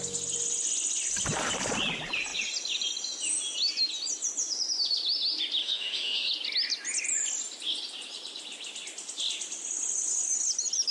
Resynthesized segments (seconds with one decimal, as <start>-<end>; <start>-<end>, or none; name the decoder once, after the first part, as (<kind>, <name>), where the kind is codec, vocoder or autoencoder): 5.6-6.3 (autoencoder, DAC-VAE)

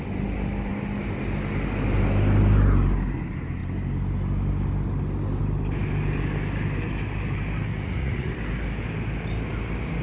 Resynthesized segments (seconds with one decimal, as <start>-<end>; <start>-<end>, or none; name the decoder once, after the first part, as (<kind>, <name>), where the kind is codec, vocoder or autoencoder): 7.7-8.3 (vocoder, Vocos)

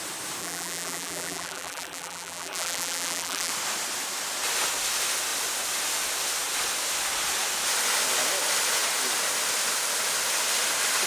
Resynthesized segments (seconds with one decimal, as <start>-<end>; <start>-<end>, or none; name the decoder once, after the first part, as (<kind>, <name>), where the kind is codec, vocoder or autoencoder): 0.4-3.5 (vocoder, BigVGAN v2)

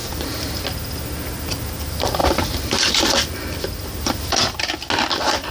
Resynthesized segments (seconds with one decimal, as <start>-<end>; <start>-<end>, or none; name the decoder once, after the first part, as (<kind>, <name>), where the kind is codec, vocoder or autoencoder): 0.0-0.6 (vocoder, BigVGAN v2); 2.2-2.9

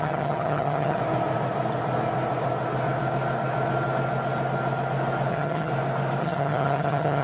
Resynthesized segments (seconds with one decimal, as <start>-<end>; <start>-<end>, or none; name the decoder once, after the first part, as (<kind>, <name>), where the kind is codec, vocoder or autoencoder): 0.0-1.0 (vocoder, HiFi-GAN); 5.3-5.7; 6.2-7.2

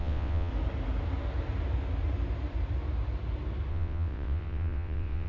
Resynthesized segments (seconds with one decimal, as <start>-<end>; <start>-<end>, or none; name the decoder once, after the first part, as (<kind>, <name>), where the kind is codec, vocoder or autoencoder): 0.0-0.5 (vocoder, WaveNeXt); 3.7-5.3

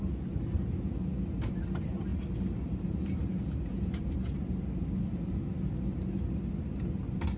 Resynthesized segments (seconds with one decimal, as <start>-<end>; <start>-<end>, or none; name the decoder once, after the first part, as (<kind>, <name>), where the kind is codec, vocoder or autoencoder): 2.1-5.0 (vocoder, BigVGAN v2)

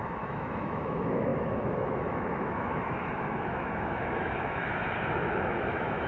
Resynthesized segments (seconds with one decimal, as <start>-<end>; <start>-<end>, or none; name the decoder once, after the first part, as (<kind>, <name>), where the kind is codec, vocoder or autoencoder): 0.0-6.1 (autoencoder, DAC-VAE)